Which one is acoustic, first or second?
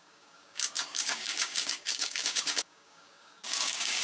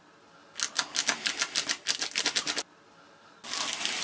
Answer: second